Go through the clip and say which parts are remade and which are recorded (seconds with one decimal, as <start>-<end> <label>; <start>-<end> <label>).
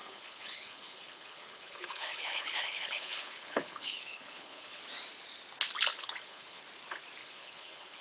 0.0-4.8 remade; 4.8-5.9 recorded; 5.9-6.6 remade; 6.6-7.2 recorded; 7.2-8.0 remade